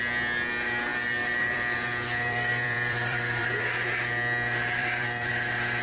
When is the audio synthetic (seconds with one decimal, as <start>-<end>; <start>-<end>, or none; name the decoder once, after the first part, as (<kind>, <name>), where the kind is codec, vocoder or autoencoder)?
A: 0.9-3.6 (vocoder, BigVGAN v2); 4.8-5.3